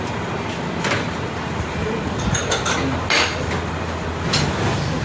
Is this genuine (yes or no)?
yes